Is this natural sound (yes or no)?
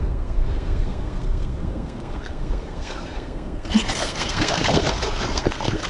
no